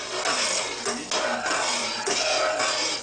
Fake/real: real